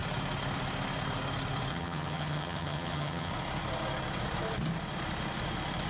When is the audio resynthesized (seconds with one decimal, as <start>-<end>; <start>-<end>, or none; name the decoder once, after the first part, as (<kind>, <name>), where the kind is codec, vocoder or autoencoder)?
1.7-3.3 (vocoder, HiFi-GAN)